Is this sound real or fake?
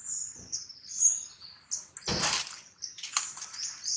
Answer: real